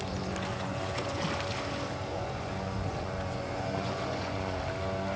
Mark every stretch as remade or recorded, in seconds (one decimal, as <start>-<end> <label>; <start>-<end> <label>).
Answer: 0.0-0.5 recorded; 0.5-1.2 remade; 1.2-2.1 recorded; 2.1-4.6 remade; 4.6-5.2 recorded